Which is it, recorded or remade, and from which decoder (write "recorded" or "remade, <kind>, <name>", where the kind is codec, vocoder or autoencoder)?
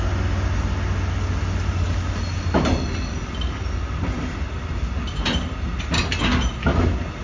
recorded